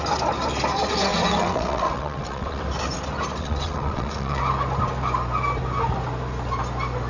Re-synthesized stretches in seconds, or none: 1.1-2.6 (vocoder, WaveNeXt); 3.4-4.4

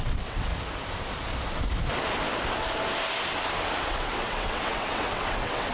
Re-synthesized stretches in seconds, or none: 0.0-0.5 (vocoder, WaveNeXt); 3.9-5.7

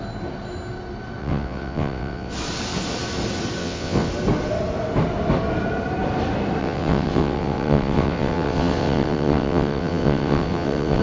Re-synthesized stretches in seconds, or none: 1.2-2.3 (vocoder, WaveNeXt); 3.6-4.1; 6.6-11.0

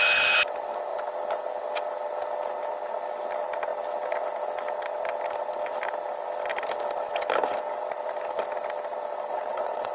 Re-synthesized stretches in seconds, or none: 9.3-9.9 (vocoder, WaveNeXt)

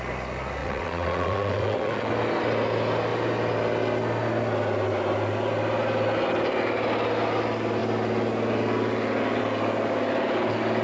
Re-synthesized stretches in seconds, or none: 0.6-2.1 (vocoder, WaveNeXt)